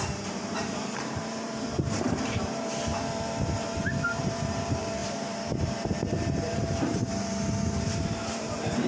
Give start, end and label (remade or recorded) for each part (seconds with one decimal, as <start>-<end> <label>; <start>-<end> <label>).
0.0-8.9 remade